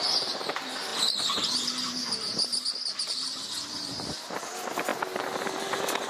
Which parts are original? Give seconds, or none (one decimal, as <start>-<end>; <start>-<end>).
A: 0.0-6.1